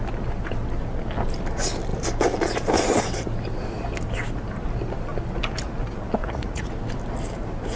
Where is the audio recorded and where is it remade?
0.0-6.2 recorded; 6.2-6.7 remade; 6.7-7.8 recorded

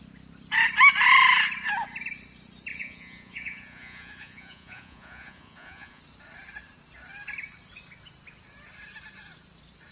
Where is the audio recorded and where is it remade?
0.0-2.7 recorded; 2.7-6.0 remade; 6.0-9.9 recorded

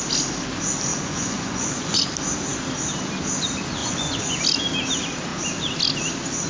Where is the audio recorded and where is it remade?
0.0-0.9 recorded; 0.9-2.0 remade; 2.0-3.8 recorded; 3.8-4.4 remade; 4.4-6.5 recorded